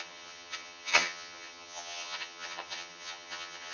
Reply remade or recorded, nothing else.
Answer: remade